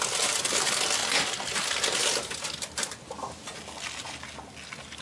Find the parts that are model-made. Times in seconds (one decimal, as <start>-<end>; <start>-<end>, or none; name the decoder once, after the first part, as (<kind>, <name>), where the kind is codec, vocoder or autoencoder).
none